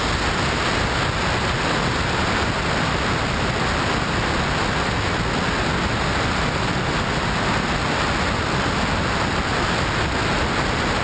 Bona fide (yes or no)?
yes